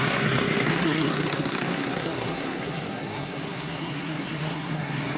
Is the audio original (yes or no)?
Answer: no